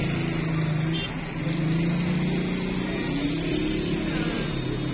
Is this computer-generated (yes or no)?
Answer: no